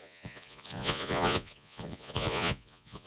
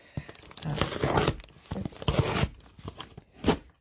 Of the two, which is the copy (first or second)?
first